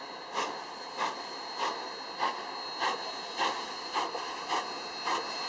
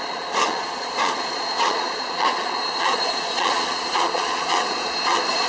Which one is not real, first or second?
second